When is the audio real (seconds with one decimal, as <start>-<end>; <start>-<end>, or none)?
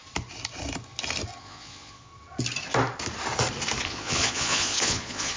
0.0-1.4; 2.1-3.8